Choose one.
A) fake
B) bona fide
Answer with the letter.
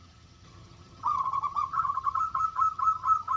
A